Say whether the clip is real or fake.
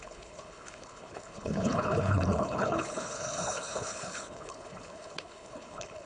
fake